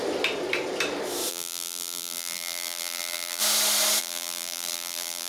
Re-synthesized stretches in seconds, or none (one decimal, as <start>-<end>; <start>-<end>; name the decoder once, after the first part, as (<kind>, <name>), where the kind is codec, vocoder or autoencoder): 1.3-3.4 (vocoder, BigVGAN v2); 4.0-5.3